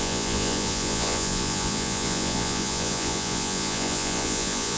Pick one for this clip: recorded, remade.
remade